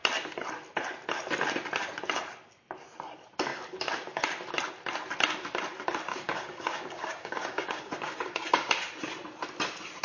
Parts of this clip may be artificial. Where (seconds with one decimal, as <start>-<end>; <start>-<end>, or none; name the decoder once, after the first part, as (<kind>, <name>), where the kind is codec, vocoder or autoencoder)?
6.1-8.7 (codec, DAC)